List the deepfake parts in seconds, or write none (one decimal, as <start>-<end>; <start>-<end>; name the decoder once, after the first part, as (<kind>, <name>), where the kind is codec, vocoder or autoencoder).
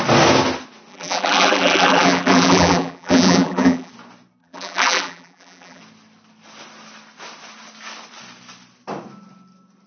0.9-3.9 (vocoder, BigVGAN v2); 4.4-5.8